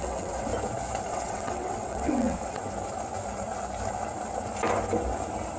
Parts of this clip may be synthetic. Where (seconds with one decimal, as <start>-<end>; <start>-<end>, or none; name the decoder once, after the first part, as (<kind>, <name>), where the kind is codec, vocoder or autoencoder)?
0.0-0.5 (vocoder, WaveNeXt); 1.1-2.6